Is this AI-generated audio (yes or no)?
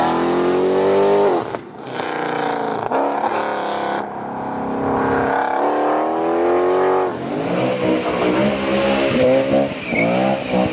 no